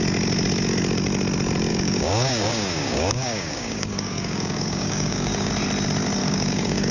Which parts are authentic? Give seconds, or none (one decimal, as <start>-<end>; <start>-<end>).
0.0-1.7; 5.5-6.2